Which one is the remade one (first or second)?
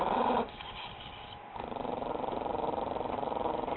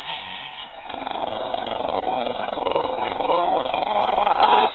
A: second